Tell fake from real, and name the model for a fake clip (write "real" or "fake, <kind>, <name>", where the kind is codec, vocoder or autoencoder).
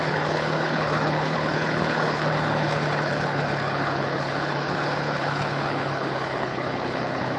fake, codec, HILCodec